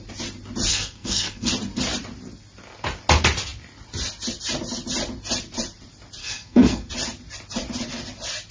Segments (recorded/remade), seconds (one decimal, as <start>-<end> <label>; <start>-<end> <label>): 0.0-0.7 recorded; 0.7-1.5 remade; 1.5-6.2 recorded; 6.2-6.9 remade; 6.9-8.5 recorded